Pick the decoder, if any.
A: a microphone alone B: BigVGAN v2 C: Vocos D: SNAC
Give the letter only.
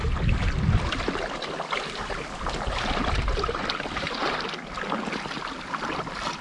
A